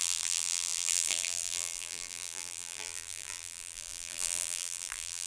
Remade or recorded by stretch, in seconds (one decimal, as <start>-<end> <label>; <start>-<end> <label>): 0.0-5.3 remade